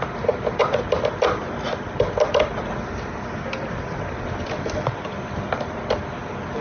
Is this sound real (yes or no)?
yes